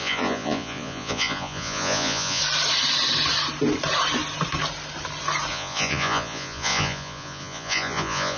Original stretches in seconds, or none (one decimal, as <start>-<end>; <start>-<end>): 2.4-5.5